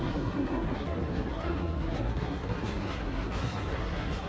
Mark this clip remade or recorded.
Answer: remade